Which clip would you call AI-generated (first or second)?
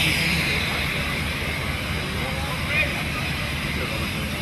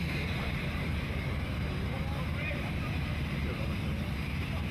second